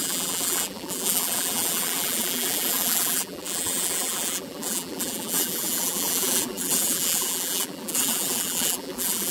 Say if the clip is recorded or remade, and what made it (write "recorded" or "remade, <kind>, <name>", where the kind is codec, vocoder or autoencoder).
remade, vocoder, BigVGAN v2